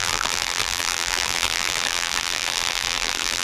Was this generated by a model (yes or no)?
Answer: yes